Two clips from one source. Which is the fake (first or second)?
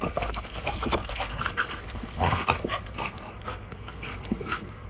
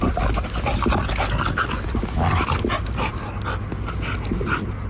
first